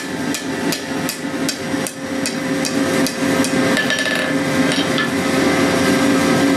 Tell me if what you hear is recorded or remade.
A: recorded